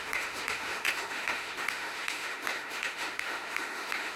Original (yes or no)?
no